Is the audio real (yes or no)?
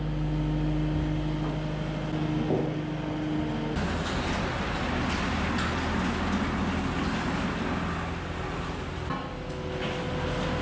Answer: yes